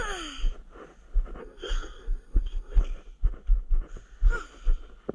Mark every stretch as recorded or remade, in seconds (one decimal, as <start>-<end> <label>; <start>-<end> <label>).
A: 0.0-1.4 recorded; 1.4-2.8 remade; 2.8-5.1 recorded